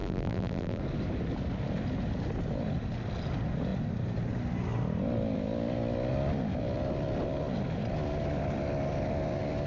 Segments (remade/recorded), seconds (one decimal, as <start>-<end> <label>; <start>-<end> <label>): 0.0-0.8 remade; 0.8-9.7 recorded